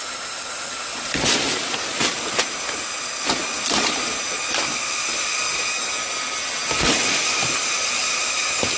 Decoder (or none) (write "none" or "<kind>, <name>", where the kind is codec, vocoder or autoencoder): none